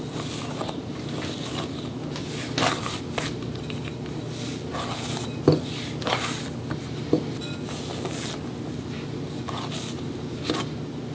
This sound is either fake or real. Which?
real